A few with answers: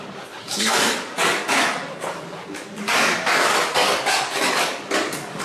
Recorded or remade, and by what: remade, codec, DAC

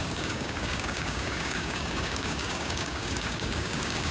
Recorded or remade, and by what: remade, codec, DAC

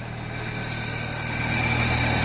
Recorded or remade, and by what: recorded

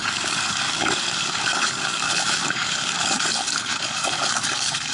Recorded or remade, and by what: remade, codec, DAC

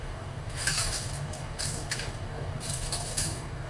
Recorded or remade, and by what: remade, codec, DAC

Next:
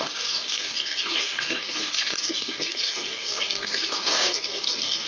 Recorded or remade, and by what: remade, codec, DAC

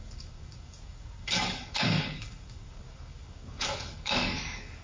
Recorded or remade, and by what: remade, codec, DAC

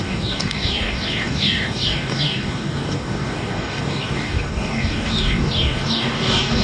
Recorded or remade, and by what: remade, codec, DAC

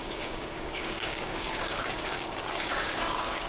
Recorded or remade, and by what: remade, codec, DAC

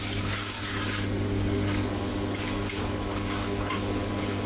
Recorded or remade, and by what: remade, codec, DAC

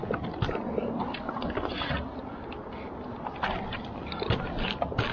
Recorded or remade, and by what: recorded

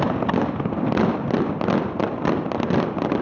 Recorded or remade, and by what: recorded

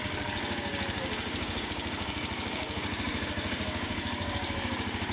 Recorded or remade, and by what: remade, codec, DAC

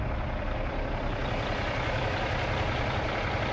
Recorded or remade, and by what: recorded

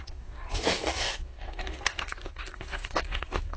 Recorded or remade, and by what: remade, codec, DAC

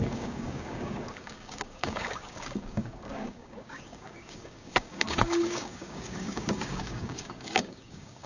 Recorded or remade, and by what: remade, codec, DAC